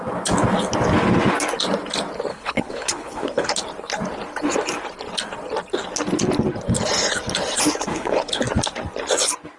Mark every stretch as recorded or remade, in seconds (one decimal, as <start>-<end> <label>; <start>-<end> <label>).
0.0-2.3 recorded; 2.3-3.5 remade; 3.5-7.9 recorded; 7.9-8.4 remade; 8.4-9.6 recorded